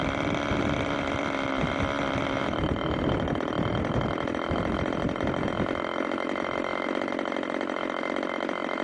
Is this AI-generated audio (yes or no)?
no